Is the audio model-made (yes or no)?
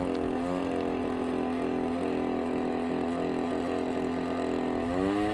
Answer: no